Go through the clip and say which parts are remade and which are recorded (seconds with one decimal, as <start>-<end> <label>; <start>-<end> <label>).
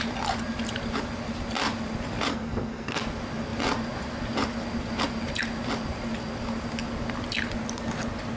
0.0-2.3 recorded; 2.3-3.0 remade; 3.0-8.4 recorded